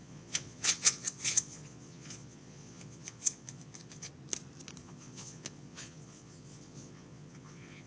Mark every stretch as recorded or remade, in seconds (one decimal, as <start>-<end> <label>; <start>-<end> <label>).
0.0-4.1 remade; 4.1-4.8 recorded; 4.8-7.9 remade